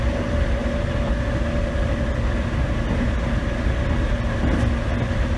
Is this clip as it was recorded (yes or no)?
yes